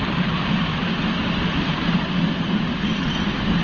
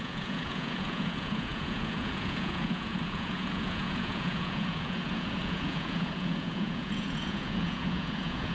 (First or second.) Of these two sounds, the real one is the first